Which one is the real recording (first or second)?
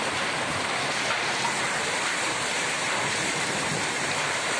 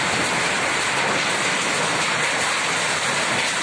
second